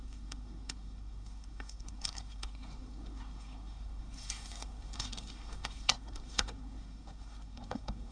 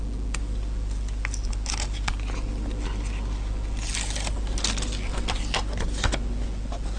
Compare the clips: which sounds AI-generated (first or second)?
first